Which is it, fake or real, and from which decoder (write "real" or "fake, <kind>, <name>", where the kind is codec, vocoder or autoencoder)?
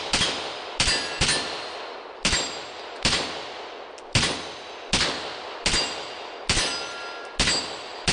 real